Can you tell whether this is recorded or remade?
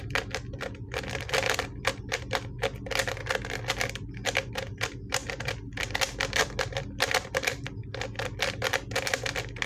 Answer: recorded